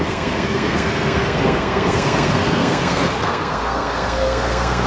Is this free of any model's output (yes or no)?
no